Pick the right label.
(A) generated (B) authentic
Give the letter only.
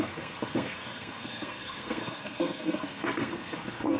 A